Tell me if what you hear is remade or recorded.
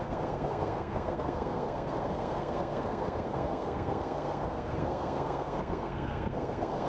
remade